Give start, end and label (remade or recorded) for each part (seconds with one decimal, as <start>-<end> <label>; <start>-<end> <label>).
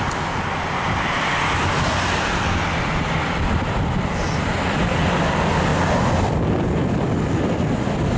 0.0-8.2 recorded